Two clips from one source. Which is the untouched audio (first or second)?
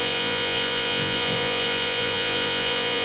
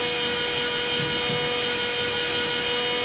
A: second